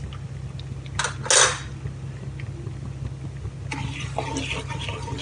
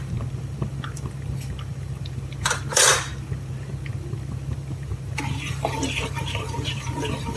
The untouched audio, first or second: first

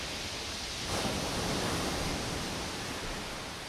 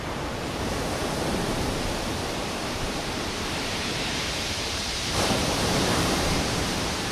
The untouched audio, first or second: first